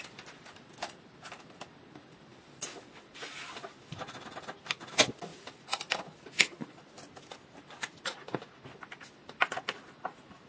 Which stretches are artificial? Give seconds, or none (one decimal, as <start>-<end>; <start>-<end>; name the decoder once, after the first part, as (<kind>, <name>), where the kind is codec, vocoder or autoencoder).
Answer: none